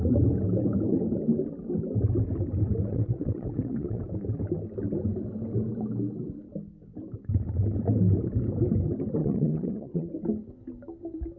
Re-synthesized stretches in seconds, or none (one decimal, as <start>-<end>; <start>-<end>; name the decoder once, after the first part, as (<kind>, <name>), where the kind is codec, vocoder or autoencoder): 2.9-4.0 (vocoder, WaveNeXt); 9.2-10.1